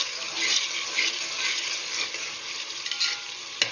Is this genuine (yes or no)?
yes